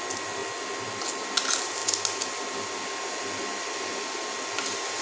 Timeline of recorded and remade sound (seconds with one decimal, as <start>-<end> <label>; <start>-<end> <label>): 0.0-5.0 recorded

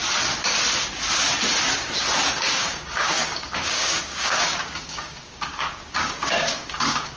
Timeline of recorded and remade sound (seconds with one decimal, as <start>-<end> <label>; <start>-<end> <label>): 0.0-2.4 recorded; 2.4-7.2 remade

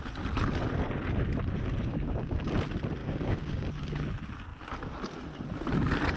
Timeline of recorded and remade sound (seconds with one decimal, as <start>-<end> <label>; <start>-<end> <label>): 0.0-1.9 recorded; 1.9-2.5 remade; 2.5-3.0 recorded; 3.0-3.7 remade; 3.7-6.2 recorded

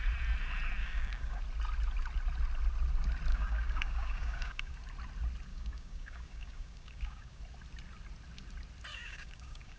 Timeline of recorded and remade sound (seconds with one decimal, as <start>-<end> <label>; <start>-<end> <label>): 0.0-0.8 recorded; 0.8-1.4 remade; 1.4-3.3 recorded; 3.3-4.7 remade; 4.7-5.5 recorded; 5.5-7.4 remade; 7.4-8.9 recorded; 8.9-9.8 remade

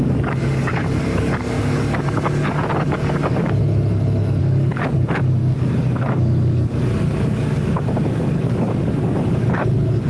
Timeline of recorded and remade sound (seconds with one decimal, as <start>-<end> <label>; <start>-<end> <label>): 0.0-3.6 remade; 3.6-4.4 recorded; 4.4-10.1 remade